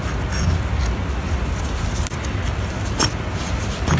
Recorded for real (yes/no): yes